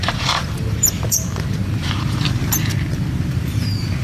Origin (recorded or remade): remade